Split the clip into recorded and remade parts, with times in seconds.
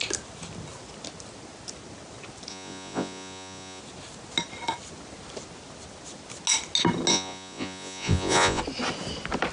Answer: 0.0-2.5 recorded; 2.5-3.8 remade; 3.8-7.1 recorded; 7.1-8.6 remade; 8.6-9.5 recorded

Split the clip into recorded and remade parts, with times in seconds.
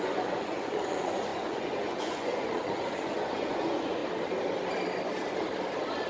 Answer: 0.0-4.0 remade; 4.0-6.1 recorded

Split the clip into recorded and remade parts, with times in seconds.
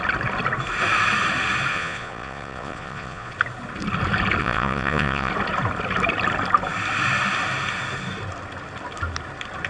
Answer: 0.0-1.7 recorded; 1.7-3.3 remade; 3.3-4.4 recorded; 4.4-5.3 remade; 5.3-9.7 recorded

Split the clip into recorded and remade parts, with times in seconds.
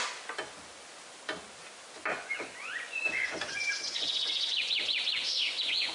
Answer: 0.0-2.1 recorded; 2.1-5.9 remade